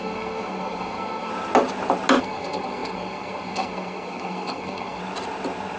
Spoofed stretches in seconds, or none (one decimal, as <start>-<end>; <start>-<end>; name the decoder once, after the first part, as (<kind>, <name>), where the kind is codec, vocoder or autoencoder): 0.0-1.3 (codec, SNAC); 2.2-5.0